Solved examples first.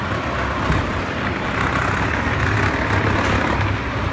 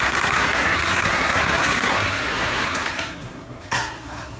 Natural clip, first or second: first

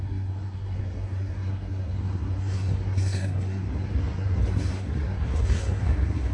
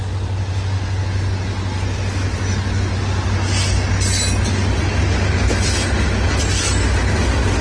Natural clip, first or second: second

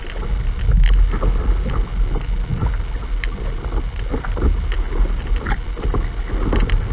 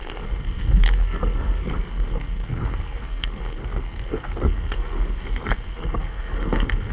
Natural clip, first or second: first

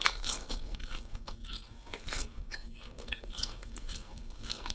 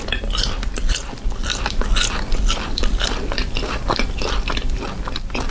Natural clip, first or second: second